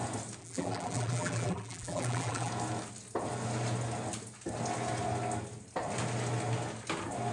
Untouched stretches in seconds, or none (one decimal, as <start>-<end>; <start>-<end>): 0.0-0.4; 2.5-7.3